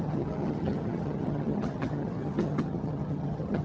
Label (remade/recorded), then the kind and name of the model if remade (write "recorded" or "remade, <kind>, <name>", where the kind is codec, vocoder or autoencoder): remade, vocoder, HiFi-GAN